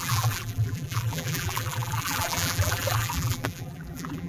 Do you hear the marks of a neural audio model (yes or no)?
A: yes